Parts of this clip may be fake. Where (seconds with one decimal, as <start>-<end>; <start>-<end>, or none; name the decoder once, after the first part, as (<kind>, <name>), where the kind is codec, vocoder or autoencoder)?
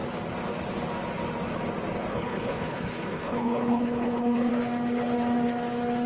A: 2.1-4.5 (codec, HILCodec)